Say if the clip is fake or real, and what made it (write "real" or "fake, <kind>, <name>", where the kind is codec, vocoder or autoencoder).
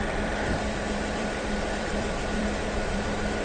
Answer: fake, vocoder, BigVGAN v2